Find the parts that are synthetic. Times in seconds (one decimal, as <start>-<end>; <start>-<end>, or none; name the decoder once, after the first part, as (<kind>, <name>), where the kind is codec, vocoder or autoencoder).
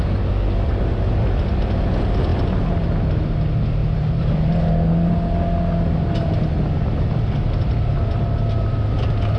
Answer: 3.8-4.5 (vocoder, BigVGAN v2)